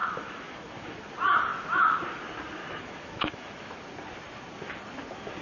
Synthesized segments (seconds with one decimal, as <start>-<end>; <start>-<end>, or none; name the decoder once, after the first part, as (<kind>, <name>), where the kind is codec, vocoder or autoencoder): 0.0-1.1 (autoencoder, DAC-VAE); 1.5-2.0; 2.6-3.8